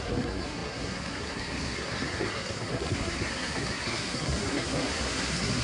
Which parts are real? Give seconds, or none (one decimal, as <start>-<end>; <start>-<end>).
none